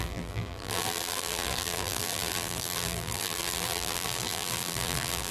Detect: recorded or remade remade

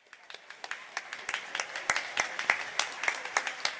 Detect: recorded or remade recorded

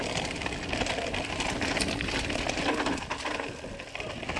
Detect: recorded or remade recorded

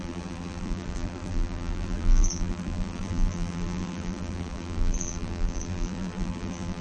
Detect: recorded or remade remade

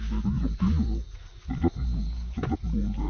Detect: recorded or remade recorded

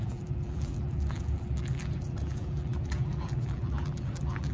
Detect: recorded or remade remade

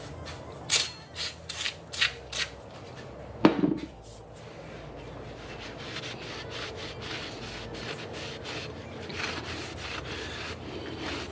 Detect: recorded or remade recorded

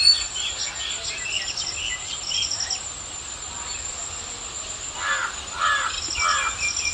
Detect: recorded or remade recorded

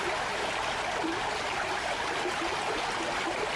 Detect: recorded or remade recorded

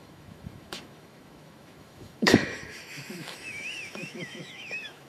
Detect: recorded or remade remade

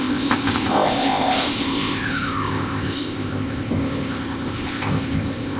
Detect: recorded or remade remade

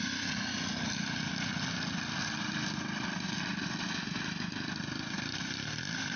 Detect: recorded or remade recorded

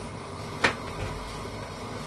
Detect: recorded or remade recorded